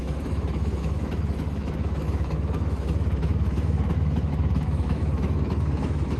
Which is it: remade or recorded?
remade